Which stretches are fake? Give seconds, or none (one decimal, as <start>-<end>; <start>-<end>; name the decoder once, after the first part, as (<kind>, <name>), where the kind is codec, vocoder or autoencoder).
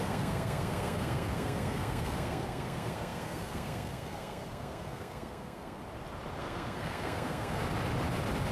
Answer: 0.0-5.8 (codec, SNAC); 6.4-7.6